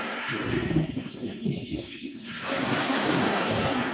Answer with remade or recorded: remade